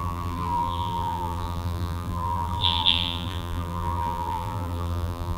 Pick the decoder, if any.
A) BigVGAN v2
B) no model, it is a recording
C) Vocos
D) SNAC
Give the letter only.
A